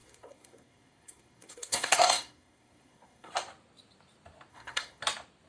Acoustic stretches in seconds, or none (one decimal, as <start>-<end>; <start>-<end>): 3.3-4.5; 5.0-5.5